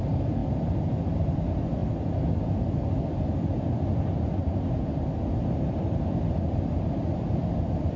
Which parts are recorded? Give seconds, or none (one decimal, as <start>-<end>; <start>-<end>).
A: 0.0-0.4; 1.4-1.8; 2.4-8.0